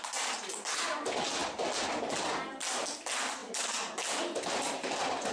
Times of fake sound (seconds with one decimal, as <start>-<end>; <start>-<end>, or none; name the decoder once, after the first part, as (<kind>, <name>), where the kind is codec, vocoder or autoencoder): none